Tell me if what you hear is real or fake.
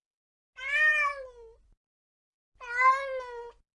real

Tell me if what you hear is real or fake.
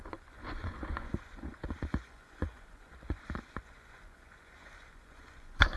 fake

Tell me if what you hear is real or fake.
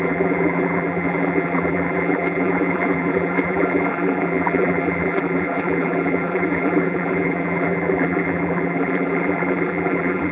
fake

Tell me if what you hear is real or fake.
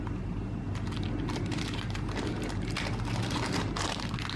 real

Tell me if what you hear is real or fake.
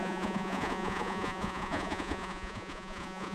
fake